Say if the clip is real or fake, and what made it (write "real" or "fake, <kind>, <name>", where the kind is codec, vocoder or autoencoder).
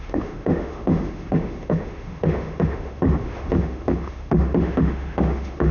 fake, autoencoder, DAC-VAE